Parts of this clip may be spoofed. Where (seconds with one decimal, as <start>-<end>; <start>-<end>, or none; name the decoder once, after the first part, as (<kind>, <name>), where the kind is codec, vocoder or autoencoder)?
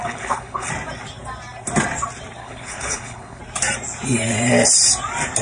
0.0-0.7 (codec, HILCodec); 2.4-3.4